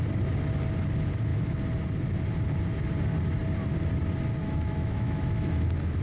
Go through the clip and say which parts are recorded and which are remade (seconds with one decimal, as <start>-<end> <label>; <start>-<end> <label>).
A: 0.0-4.4 recorded; 4.4-5.5 remade; 5.5-6.0 recorded